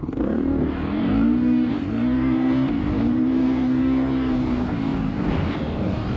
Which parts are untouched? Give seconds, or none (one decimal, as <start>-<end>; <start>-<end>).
none